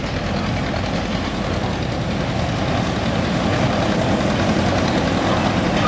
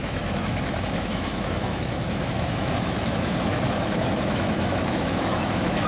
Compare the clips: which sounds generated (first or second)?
second